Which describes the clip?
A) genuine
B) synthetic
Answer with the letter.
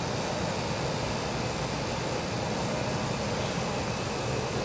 A